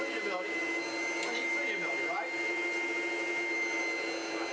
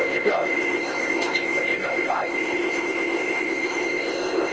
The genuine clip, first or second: first